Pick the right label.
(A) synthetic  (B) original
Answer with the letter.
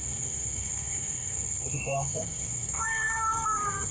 A